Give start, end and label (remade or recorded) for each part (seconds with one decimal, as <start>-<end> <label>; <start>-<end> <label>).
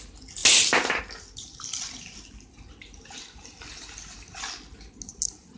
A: 0.0-5.6 recorded